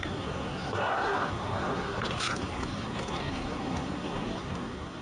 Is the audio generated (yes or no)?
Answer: yes